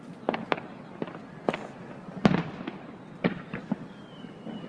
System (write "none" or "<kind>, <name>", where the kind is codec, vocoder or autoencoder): none